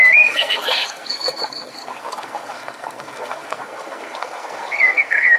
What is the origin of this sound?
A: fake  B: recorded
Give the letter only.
A